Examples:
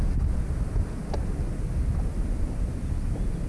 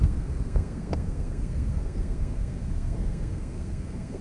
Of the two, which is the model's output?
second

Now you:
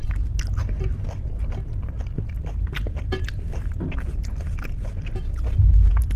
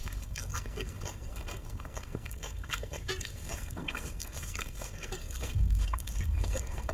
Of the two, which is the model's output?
second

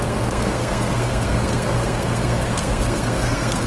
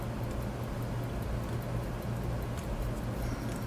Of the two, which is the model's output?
first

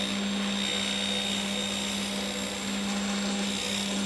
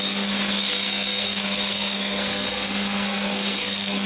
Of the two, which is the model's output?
second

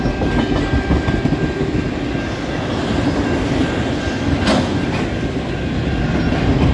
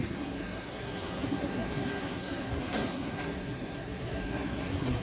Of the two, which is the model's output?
second